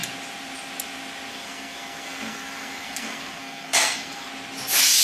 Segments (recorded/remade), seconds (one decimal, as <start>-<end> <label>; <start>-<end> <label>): 0.0-1.3 recorded; 1.3-4.3 remade; 4.3-5.0 recorded